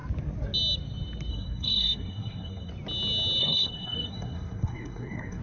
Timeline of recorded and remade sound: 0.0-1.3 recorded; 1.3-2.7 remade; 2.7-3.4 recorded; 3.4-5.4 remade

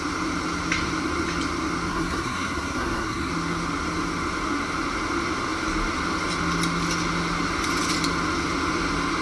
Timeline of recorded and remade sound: 0.0-1.9 recorded; 1.9-3.3 remade; 3.3-9.2 recorded

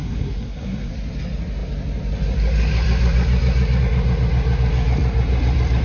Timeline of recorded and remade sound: 0.0-0.9 remade; 0.9-5.8 recorded

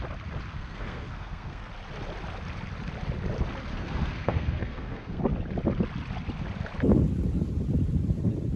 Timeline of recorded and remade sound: 0.0-0.5 recorded; 0.5-1.7 remade; 1.7-3.7 recorded; 3.7-5.2 remade; 5.2-8.6 recorded

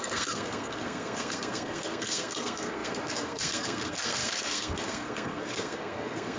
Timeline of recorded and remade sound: 0.0-6.4 remade